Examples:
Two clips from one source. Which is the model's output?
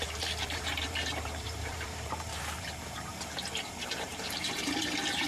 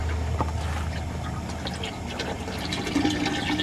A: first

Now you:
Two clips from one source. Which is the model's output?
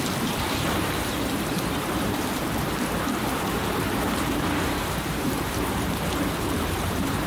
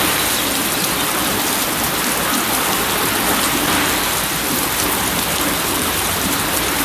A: first